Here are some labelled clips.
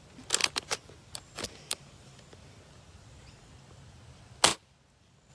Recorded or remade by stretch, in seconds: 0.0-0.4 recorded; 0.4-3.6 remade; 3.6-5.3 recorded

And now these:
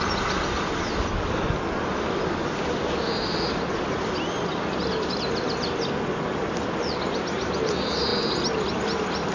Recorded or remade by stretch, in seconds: 0.0-8.1 recorded; 8.1-8.7 remade; 8.7-9.3 recorded

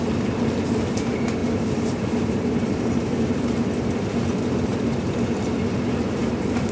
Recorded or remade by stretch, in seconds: 0.0-1.4 recorded; 1.4-3.4 remade; 3.4-6.7 recorded

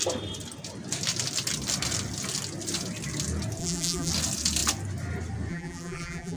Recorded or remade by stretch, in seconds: 0.0-3.6 recorded; 3.6-4.1 remade; 4.1-5.5 recorded; 5.5-6.4 remade

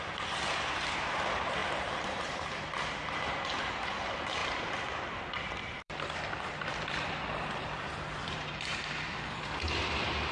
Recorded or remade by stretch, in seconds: 0.0-1.6 recorded; 1.6-2.7 remade; 2.7-4.4 recorded; 4.4-9.5 remade; 9.5-10.3 recorded

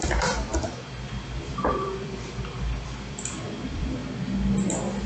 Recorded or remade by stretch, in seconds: 0.0-4.0 remade; 4.0-5.1 recorded

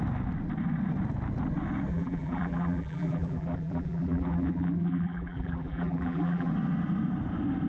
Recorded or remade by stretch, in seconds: 0.0-1.9 recorded; 1.9-6.5 remade; 6.5-7.7 recorded

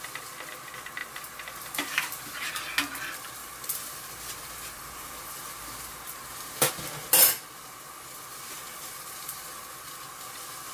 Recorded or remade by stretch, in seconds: 0.0-1.0 recorded; 1.0-2.5 remade; 2.5-3.4 recorded; 3.4-6.7 remade; 6.7-8.7 recorded; 8.7-9.9 remade; 9.9-10.7 recorded